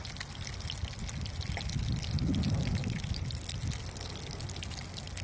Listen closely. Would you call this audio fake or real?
real